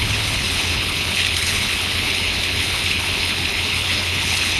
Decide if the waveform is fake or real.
fake